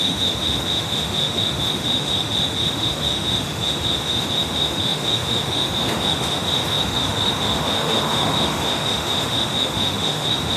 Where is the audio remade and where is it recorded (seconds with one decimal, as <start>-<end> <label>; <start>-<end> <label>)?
0.0-10.6 remade